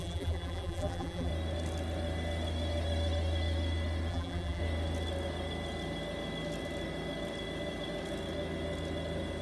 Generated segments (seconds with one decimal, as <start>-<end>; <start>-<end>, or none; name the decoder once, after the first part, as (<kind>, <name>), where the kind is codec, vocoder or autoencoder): 0.0-1.3 (vocoder, BigVGAN v2); 4.1-4.6

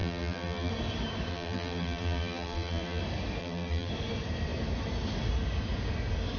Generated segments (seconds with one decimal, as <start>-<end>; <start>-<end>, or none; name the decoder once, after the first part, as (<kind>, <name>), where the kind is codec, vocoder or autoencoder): 0.0-0.7 (vocoder, BigVGAN v2); 1.3-3.0; 3.4-3.9

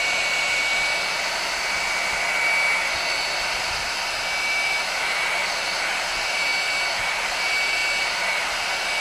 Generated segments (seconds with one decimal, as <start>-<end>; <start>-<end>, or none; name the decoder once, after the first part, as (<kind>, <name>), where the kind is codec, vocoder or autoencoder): 0.0-0.7 (vocoder, BigVGAN v2); 3.6-9.0

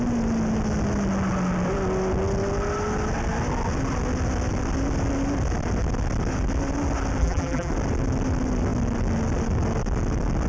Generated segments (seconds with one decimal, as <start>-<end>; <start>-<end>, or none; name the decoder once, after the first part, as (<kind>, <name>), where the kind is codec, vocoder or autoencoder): 7.2-7.7 (vocoder, BigVGAN v2)

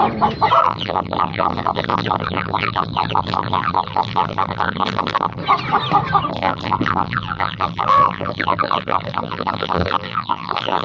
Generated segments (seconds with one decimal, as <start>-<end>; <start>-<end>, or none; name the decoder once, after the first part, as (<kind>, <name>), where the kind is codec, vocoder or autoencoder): 0.6-5.4 (vocoder, BigVGAN v2); 6.3-10.8

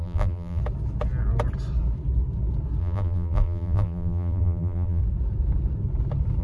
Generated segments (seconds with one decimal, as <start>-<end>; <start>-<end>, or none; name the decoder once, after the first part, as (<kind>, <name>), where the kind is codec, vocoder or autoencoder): 0.0-0.6 (vocoder, BigVGAN v2); 2.8-5.0

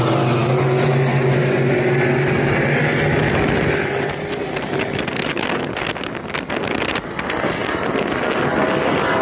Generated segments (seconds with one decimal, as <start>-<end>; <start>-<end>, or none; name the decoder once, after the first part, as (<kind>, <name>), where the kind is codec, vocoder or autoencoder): none

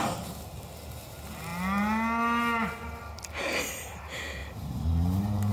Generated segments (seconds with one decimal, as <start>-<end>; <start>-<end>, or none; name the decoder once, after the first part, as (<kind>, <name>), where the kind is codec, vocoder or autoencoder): 4.4-5.5 (vocoder, BigVGAN v2)